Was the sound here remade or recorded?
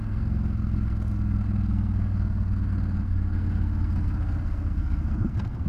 remade